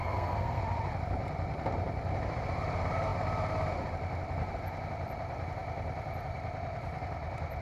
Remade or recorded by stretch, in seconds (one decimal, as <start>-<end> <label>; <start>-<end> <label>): 0.0-0.6 remade; 0.6-7.6 recorded